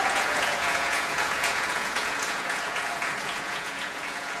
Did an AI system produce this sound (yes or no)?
yes